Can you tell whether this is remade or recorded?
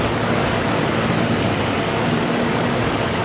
remade